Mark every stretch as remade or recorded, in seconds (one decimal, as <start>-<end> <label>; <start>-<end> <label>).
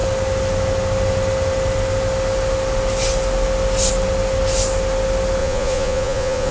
0.0-5.4 recorded; 5.4-6.5 remade